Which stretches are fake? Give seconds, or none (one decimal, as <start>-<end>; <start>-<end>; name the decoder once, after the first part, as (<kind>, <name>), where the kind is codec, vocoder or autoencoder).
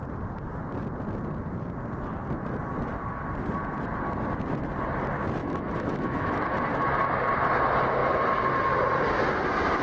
5.4-6.9 (autoencoder, DAC-VAE)